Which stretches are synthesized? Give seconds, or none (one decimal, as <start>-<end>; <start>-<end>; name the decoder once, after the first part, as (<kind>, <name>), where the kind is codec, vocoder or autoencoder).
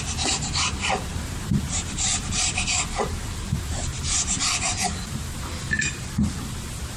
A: 1.1-5.3 (vocoder, BigVGAN v2)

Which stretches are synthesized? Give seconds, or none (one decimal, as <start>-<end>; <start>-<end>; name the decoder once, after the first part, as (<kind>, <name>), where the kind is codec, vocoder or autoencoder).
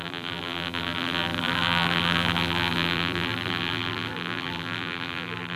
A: 0.0-5.6 (vocoder, BigVGAN v2)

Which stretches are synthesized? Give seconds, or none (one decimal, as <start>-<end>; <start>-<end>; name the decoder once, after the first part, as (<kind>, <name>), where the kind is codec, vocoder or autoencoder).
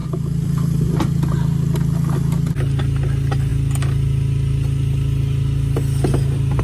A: 0.0-0.9 (vocoder, BigVGAN v2)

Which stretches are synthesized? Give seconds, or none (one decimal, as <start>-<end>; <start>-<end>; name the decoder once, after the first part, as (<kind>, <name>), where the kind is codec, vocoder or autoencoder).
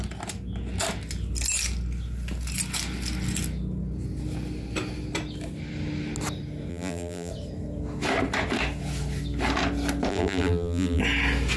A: 6.7-7.3 (vocoder, BigVGAN v2); 10.1-11.0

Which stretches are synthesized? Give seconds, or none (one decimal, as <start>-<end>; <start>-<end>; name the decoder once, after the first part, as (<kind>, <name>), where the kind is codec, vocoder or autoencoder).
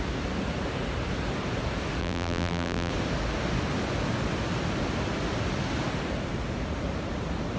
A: 2.0-2.9 (vocoder, BigVGAN v2)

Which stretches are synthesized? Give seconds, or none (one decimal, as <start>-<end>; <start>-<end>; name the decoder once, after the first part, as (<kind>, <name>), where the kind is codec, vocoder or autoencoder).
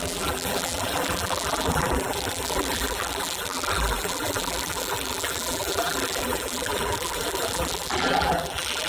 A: 0.0-8.9 (vocoder, BigVGAN v2)